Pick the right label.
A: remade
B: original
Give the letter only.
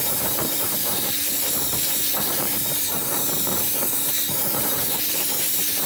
A